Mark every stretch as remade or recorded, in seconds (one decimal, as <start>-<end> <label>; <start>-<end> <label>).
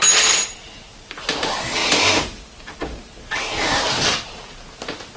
0.0-5.2 recorded